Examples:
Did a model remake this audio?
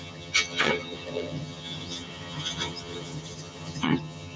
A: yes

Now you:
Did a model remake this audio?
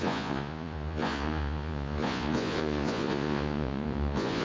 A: yes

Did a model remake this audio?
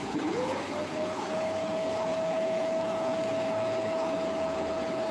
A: yes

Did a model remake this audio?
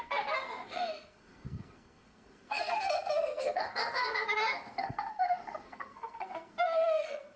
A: yes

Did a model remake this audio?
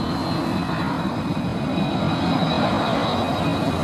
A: no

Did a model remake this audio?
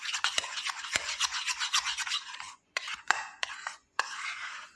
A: yes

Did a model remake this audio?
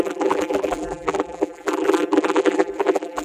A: yes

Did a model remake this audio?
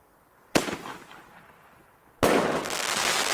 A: no